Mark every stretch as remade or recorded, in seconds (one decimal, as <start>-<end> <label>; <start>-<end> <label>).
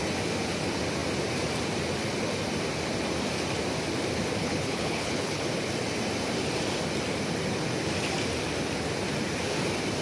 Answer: 0.0-4.4 recorded; 4.4-5.4 remade; 5.4-10.0 recorded